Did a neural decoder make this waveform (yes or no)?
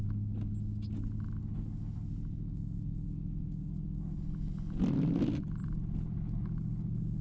no